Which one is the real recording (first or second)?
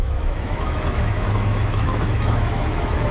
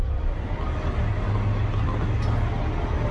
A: second